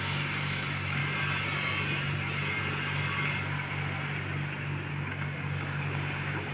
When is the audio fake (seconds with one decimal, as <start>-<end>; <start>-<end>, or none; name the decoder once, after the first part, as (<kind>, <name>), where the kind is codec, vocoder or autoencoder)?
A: 0.0-1.0 (codec, DAC); 4.9-6.5